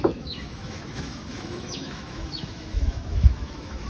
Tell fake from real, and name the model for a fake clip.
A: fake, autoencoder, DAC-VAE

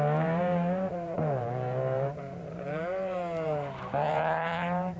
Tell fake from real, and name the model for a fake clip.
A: fake, vocoder, BigVGAN v2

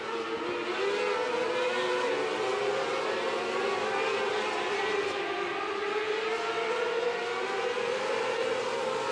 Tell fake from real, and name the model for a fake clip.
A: real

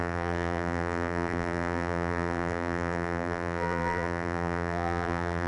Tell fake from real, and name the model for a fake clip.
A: fake, vocoder, BigVGAN v2